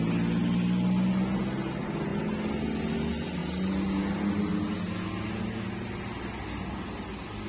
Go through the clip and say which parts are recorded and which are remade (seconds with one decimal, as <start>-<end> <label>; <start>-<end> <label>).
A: 0.0-7.5 recorded